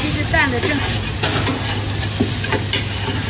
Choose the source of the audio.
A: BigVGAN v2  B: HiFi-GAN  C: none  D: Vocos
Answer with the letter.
C